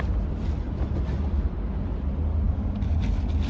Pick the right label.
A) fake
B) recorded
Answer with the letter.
B